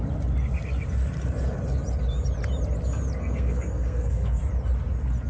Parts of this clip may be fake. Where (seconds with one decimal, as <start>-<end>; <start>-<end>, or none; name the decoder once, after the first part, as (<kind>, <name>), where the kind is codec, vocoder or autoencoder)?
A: 3.2-4.4 (codec, SNAC)